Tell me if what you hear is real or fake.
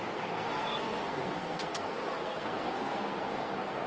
fake